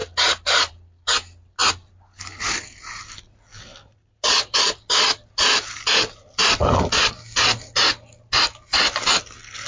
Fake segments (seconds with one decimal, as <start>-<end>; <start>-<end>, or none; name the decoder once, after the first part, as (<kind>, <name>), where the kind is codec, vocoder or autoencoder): none